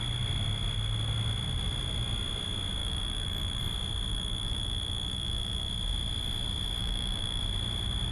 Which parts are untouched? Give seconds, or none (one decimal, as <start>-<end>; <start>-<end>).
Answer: 0.0-2.8; 3.6-4.1; 5.7-6.8; 7.4-8.1